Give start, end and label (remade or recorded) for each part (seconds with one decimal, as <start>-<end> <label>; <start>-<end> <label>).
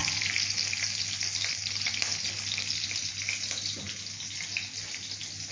0.0-5.5 recorded